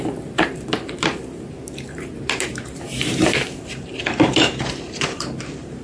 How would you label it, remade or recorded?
remade